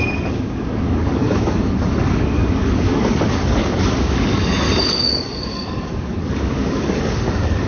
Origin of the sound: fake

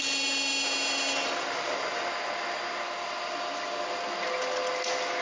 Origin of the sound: real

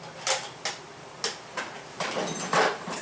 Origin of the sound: real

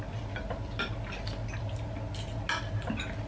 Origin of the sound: real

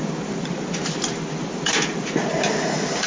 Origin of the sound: real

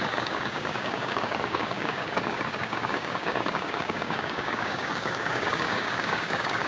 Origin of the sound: fake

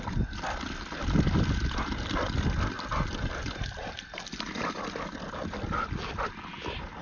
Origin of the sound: real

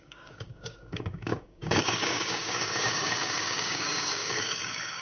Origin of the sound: fake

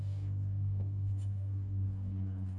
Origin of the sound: fake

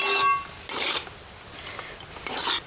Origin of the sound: real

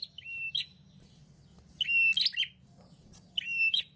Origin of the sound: real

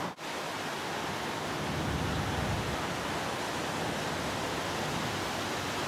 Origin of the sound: real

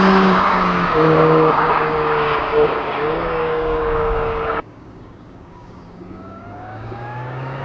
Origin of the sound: fake